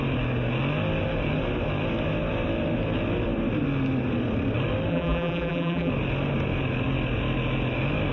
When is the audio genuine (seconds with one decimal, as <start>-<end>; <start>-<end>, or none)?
0.0-4.9; 5.9-8.1